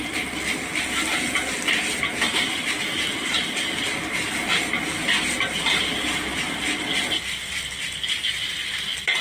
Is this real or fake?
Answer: real